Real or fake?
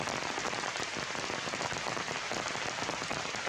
real